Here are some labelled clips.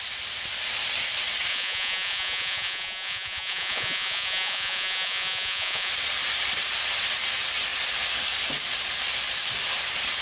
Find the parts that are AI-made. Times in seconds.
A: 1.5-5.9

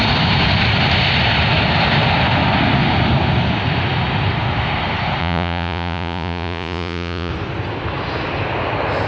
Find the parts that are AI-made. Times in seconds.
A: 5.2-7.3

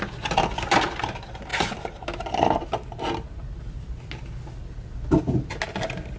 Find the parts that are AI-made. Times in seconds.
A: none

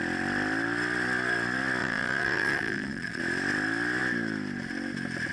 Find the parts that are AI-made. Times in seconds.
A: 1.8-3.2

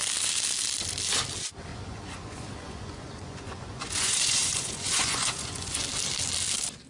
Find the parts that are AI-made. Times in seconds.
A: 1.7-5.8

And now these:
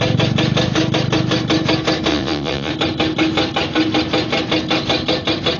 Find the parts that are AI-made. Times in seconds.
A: 2.1-2.7

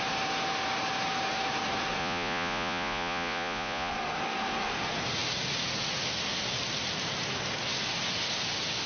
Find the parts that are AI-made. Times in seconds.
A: 2.0-3.9